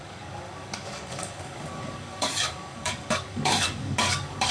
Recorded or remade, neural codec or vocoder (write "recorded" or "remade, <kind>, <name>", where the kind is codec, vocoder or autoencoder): remade, codec, DAC